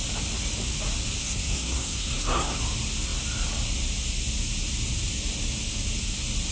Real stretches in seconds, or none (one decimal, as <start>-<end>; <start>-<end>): 0.0-1.2; 2.6-6.5